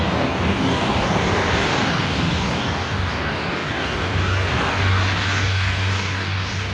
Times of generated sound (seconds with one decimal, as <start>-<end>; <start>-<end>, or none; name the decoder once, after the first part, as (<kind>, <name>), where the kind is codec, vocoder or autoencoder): 0.0-6.7 (codec, DAC)